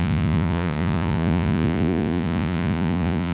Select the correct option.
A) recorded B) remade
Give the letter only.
B